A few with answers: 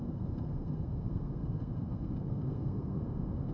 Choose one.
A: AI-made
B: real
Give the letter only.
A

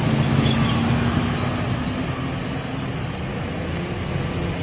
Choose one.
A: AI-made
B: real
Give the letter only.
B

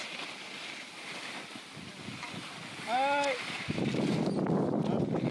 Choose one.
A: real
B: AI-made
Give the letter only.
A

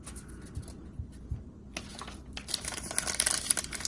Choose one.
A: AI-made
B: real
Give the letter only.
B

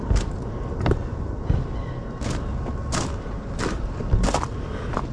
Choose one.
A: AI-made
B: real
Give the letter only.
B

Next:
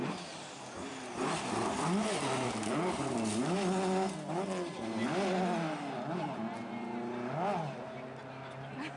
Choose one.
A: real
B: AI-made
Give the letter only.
A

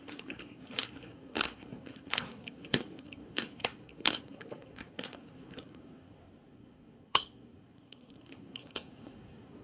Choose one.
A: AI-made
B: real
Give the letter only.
A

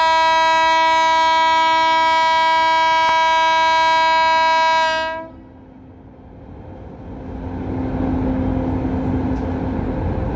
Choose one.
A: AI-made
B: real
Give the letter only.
B